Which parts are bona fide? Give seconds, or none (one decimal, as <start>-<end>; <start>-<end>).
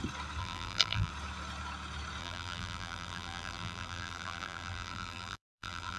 0.0-0.4; 1.1-2.2